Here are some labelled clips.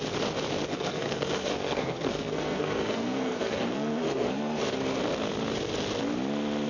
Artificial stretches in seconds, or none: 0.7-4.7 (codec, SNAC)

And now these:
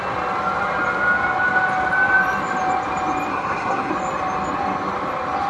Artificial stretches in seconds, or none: 3.3-3.9 (codec, SNAC)

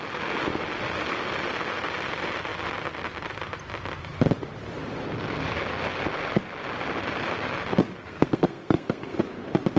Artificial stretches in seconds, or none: 8.0-9.2 (codec, SNAC)